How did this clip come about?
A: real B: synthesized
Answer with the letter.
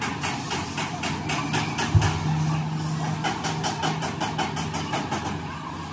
A